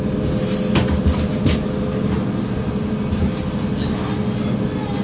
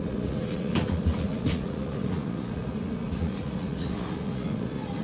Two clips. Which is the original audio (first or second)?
first